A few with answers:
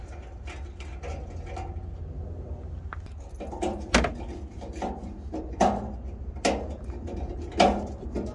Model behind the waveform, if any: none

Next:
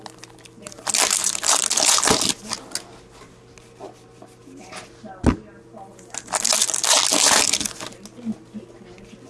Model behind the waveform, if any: none